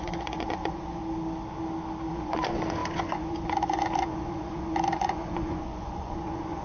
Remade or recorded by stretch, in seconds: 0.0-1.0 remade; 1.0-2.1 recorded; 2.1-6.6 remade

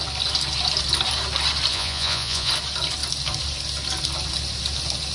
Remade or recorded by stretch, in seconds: 0.0-1.7 recorded; 1.7-2.5 remade; 2.5-5.1 recorded

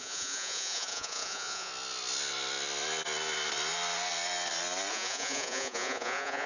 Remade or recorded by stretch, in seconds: 0.0-1.7 remade; 1.7-4.9 recorded; 4.9-6.5 remade

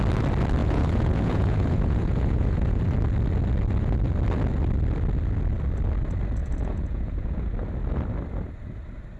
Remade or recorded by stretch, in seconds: 0.0-0.6 recorded; 0.6-2.8 remade; 2.8-6.4 recorded; 6.4-7.5 remade; 7.5-9.2 recorded

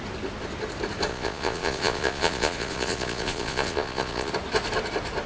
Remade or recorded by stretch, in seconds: 0.0-1.1 recorded; 1.1-4.3 remade; 4.3-5.3 recorded